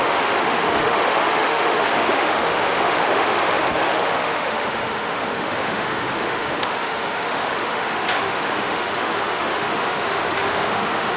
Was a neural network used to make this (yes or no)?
yes